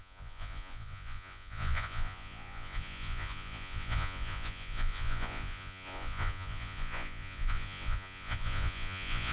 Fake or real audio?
fake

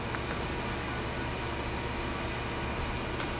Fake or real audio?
real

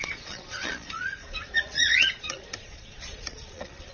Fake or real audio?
fake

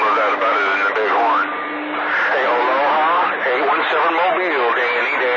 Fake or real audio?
real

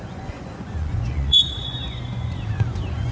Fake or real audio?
fake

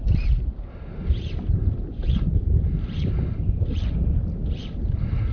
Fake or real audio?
real